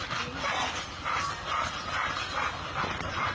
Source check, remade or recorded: recorded